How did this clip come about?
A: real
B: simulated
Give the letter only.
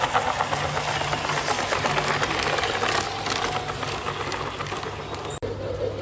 A